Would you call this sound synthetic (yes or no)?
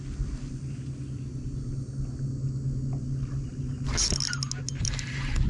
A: no